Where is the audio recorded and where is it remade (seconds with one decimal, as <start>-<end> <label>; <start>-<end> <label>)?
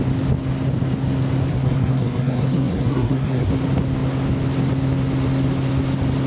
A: 0.0-1.5 recorded; 1.5-3.5 remade; 3.5-6.3 recorded